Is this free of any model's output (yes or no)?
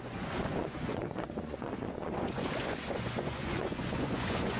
no